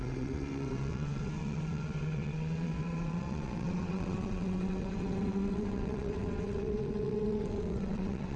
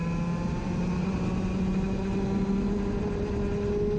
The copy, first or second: first